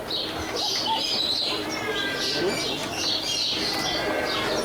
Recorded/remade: recorded